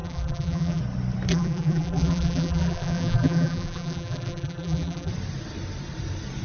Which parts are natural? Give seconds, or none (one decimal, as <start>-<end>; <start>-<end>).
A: 0.8-1.3; 5.1-6.4